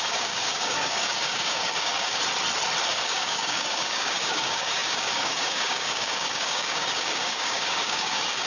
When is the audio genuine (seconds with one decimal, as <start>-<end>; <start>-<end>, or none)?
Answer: 2.2-2.9